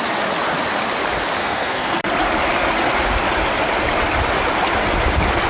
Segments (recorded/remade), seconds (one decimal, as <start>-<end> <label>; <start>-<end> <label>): 0.0-1.4 recorded; 1.4-2.1 remade; 2.1-5.5 recorded

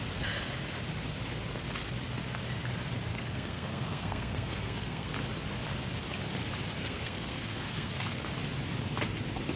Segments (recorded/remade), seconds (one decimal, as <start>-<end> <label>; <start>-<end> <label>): 0.0-3.1 recorded; 3.1-5.1 remade; 5.1-6.8 recorded; 6.8-8.3 remade; 8.3-9.6 recorded